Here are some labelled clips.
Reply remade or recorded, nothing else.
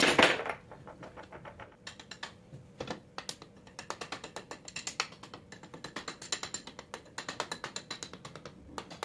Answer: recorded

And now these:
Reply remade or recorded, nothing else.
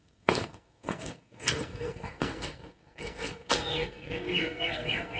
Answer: remade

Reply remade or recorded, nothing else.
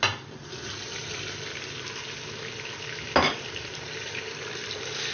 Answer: recorded